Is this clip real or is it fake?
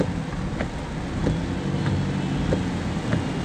real